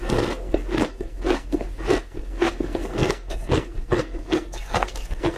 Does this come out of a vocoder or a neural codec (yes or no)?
yes